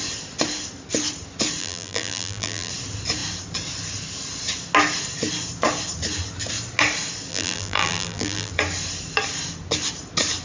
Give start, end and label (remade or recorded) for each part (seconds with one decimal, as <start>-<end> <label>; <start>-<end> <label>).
0.0-1.6 recorded; 1.6-2.7 remade; 2.7-7.3 recorded; 7.3-8.5 remade; 8.5-10.4 recorded